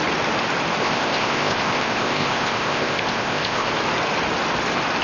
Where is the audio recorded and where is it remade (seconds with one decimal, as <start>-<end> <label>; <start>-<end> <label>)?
0.0-0.8 recorded; 0.8-3.7 remade; 3.7-5.0 recorded